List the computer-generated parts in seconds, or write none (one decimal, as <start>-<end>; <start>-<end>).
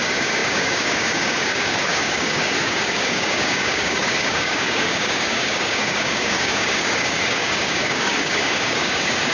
0.0-9.3